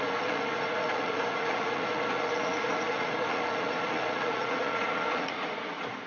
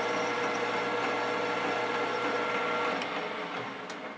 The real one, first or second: second